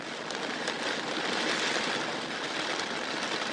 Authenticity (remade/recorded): recorded